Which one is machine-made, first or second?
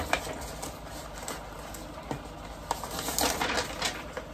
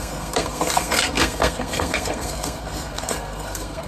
second